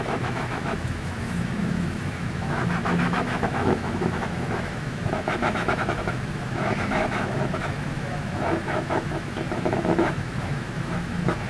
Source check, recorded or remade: remade